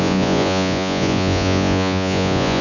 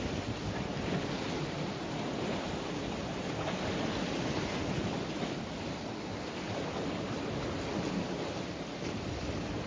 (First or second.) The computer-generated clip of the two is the first